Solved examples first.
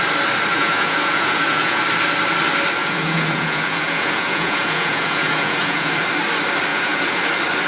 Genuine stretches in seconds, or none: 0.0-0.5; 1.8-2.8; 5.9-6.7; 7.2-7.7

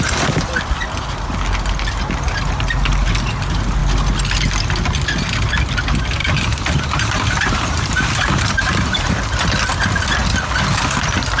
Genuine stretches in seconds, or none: 0.0-6.2; 9.1-11.4

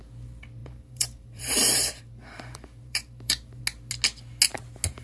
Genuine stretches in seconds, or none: 0.0-0.6; 3.6-5.0

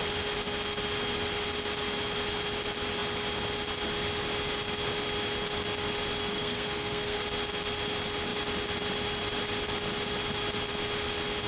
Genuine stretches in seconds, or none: 0.0-6.3; 7.2-11.5

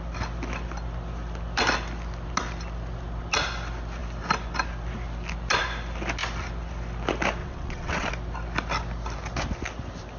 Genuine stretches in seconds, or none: 0.0-7.4; 8.1-10.2

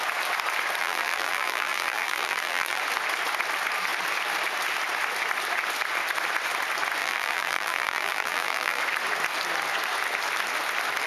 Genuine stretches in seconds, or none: 0.0-0.8; 2.8-7.0; 8.8-11.1

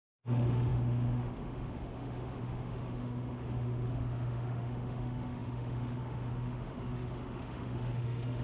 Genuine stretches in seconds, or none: none

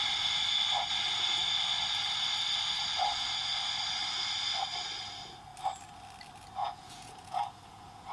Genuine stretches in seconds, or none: 0.0-6.6